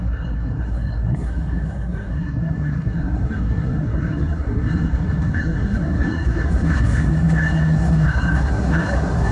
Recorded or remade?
remade